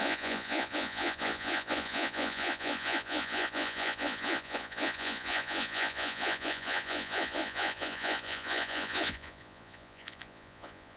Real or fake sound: fake